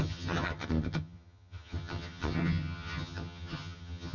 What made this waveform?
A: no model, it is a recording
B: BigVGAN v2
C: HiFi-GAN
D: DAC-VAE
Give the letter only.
C